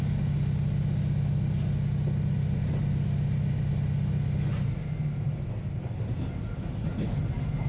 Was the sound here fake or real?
real